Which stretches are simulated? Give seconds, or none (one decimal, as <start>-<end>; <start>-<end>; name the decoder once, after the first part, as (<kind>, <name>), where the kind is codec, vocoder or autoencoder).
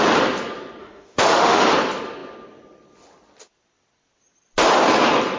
0.8-1.7 (autoencoder, DAC-VAE)